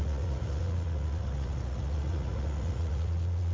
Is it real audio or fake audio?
fake